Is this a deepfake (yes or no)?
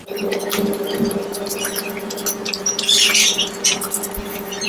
no